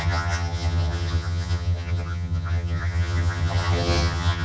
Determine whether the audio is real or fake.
fake